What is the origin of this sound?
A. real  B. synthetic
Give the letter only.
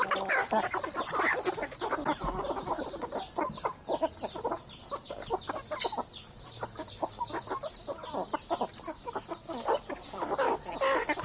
A